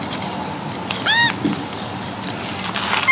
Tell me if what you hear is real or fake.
real